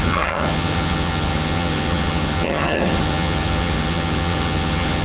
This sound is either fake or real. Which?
fake